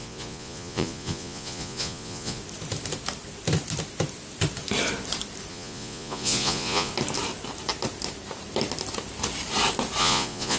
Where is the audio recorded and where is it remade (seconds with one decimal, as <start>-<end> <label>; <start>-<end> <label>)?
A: 0.0-2.4 remade; 2.4-5.5 recorded; 5.5-6.9 remade; 6.9-10.0 recorded; 10.0-10.6 remade